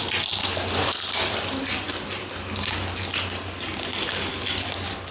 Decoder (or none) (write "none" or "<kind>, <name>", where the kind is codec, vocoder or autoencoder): none